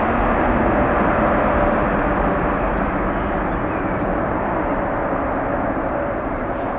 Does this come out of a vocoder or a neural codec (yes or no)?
no